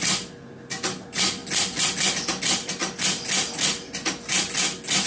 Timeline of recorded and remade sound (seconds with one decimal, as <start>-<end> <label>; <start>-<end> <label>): 0.0-5.1 recorded